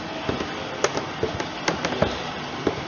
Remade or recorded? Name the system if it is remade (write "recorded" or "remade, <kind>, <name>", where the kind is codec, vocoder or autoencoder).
recorded